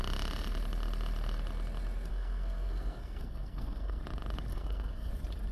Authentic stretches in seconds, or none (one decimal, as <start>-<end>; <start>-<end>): 0.0-2.1; 4.0-4.5; 5.1-5.5

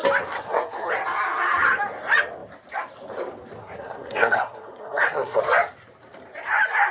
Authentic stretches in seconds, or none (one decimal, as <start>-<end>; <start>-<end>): 0.0-0.4; 0.9-3.6; 5.4-6.9

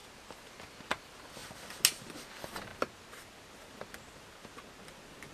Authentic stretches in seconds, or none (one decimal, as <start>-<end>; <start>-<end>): 0.0-5.3

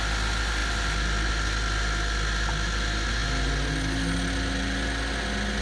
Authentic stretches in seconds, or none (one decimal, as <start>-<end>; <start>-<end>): 0.0-5.6

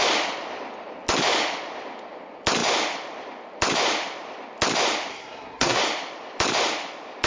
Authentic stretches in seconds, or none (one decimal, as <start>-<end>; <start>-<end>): 0.0-5.1; 5.8-7.3

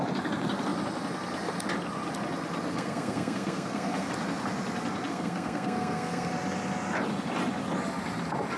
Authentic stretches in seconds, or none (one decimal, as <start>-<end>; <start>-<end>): 0.0-2.7; 4.1-5.1; 6.3-8.6